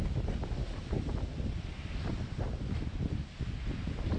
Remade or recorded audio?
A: recorded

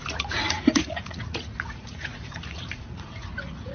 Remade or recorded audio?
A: remade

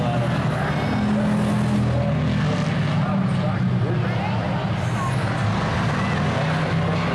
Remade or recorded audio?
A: recorded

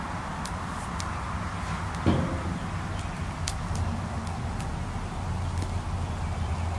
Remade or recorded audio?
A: recorded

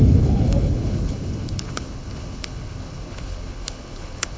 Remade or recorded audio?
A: remade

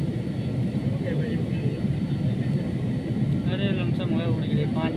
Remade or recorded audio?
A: recorded